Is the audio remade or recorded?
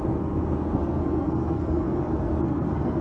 remade